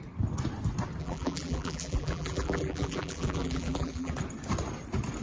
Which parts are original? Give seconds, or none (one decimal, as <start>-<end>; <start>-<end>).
0.0-1.0; 4.1-5.2